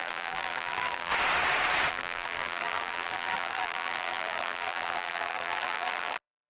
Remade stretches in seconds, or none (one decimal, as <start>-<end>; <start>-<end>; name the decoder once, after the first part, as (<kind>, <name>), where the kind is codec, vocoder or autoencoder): 0.0-1.1 (vocoder, BigVGAN v2); 1.9-6.5